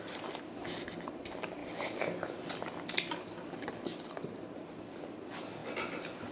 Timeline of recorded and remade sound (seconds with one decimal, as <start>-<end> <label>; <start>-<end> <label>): 0.0-6.3 recorded